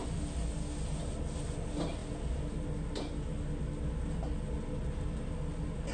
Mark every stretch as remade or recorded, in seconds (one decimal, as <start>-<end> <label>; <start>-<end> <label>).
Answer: 0.0-5.9 recorded